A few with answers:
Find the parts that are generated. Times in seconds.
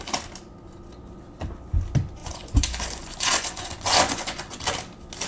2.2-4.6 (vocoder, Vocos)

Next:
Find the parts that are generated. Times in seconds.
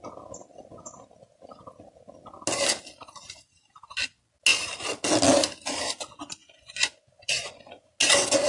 6.4-7.9 (vocoder, Vocos)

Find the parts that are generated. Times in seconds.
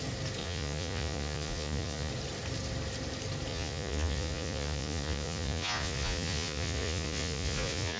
0.4-2.1 (vocoder, Vocos); 3.5-8.0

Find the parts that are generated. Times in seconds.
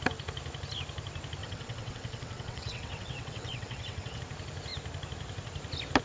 1.4-4.2 (vocoder, WaveNeXt)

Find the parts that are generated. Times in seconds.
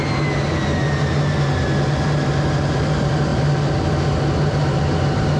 none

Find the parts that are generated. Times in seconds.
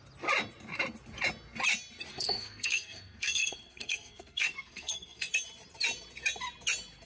2.1-5.3 (codec, SNAC)